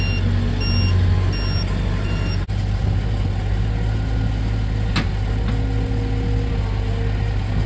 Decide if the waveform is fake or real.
real